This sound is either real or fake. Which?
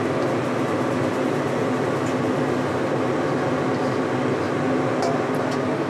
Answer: real